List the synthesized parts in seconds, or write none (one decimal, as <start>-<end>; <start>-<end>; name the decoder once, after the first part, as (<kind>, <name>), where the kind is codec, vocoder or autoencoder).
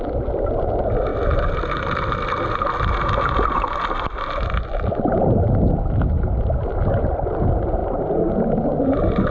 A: none